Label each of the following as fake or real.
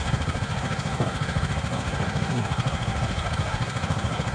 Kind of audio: fake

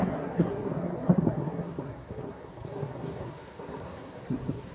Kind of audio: fake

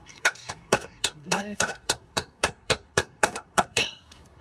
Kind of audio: fake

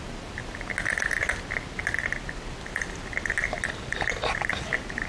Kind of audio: real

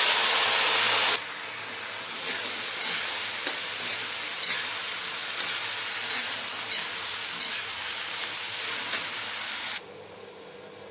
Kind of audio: real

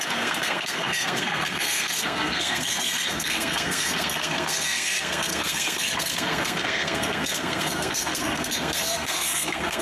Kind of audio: fake